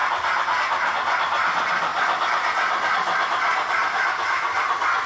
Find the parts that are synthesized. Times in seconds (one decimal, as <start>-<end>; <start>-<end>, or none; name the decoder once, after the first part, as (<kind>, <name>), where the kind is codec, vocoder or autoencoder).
none